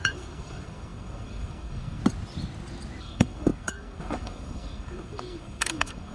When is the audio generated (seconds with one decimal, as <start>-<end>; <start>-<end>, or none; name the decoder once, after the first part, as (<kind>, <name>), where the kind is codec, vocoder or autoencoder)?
0.0-2.0 (codec, SNAC); 3.0-6.1